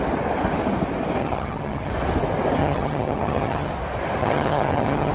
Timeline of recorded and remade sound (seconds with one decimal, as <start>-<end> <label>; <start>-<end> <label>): 0.0-1.2 recorded; 1.2-1.9 remade; 1.9-2.6 recorded; 2.6-3.7 remade; 3.7-4.2 recorded; 4.2-5.1 remade